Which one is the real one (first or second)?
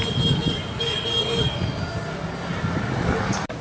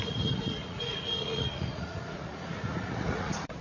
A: first